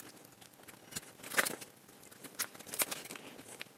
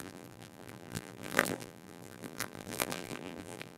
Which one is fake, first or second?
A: second